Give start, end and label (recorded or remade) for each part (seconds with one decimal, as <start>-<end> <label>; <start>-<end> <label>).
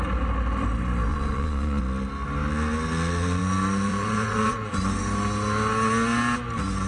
0.0-1.1 recorded; 1.1-1.8 remade; 1.8-3.9 recorded; 3.9-5.0 remade; 5.0-6.9 recorded